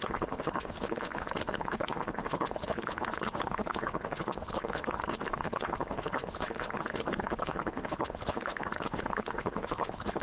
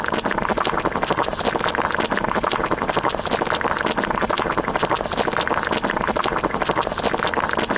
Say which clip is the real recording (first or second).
second